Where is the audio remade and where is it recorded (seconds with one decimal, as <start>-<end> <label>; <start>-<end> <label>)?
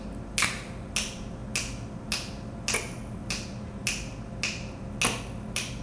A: 0.0-5.8 recorded